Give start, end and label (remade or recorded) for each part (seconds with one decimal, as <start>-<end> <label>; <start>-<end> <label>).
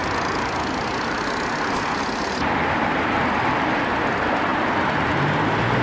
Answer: 0.0-5.8 recorded